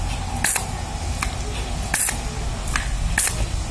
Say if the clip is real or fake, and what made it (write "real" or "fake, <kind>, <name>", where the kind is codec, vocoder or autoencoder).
real